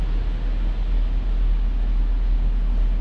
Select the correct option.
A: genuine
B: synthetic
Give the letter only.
A